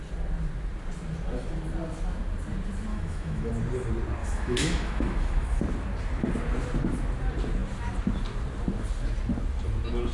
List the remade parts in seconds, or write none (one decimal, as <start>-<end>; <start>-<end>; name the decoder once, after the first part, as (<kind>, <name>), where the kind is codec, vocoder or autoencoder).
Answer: 2.9-3.5 (autoencoder, DAC-VAE); 4.2-5.6